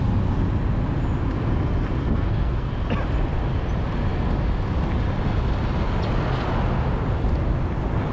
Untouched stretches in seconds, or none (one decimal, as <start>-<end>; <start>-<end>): 0.0-2.0; 2.7-8.1